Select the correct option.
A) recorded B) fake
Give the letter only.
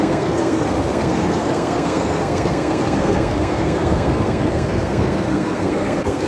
B